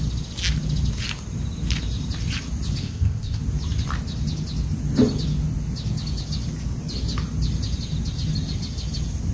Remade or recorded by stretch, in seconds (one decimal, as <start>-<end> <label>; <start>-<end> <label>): 0.0-2.8 recorded; 2.8-3.4 remade; 3.4-9.3 recorded